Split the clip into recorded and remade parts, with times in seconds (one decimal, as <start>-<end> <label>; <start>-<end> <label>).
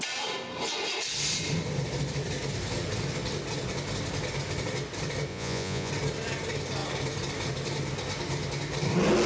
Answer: 0.0-5.3 recorded; 5.3-5.9 remade; 5.9-9.3 recorded